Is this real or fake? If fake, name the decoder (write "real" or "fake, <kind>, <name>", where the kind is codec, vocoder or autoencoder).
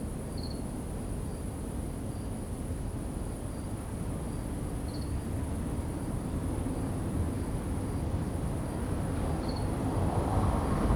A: real